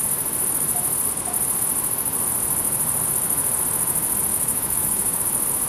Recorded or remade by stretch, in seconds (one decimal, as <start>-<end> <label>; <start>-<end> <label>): 0.0-4.3 recorded; 4.3-5.2 remade; 5.2-5.7 recorded